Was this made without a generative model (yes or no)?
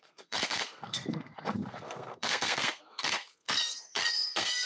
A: no